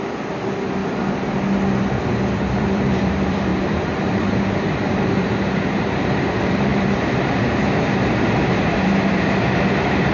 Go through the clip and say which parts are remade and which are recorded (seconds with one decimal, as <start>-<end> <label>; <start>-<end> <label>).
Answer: 0.0-0.8 remade; 0.8-2.6 recorded; 2.6-10.1 remade